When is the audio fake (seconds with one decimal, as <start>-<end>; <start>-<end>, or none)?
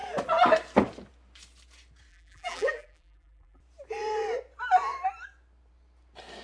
2.1-3.6